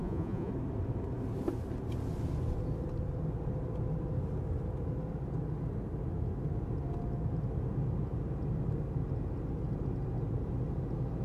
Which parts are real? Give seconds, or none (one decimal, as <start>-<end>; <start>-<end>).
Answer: 0.5-11.2